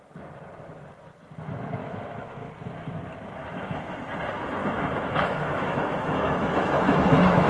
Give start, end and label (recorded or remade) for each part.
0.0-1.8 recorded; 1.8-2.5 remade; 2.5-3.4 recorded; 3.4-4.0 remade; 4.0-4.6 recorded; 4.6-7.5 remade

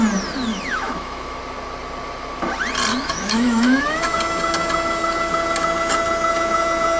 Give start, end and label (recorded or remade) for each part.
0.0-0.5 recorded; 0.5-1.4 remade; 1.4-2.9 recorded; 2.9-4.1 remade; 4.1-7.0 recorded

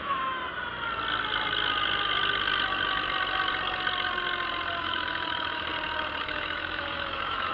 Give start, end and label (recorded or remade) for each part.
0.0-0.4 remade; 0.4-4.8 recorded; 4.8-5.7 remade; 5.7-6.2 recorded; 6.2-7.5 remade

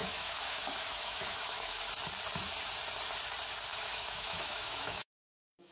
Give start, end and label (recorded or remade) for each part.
0.0-1.8 remade; 1.8-3.7 recorded; 3.7-5.7 remade

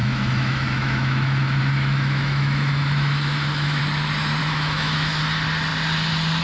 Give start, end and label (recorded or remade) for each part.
0.0-3.8 remade; 3.8-4.4 recorded; 4.4-5.2 remade; 5.2-6.4 recorded

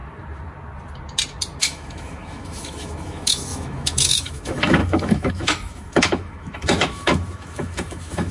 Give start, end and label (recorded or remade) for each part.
0.0-1.6 recorded; 1.6-8.3 remade